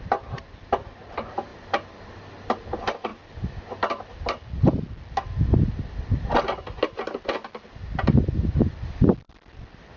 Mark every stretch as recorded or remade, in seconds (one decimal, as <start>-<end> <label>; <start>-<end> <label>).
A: 0.0-10.0 recorded